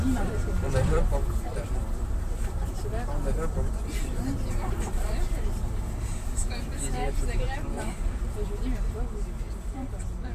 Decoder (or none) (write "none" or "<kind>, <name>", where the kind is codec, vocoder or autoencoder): vocoder, BigVGAN v2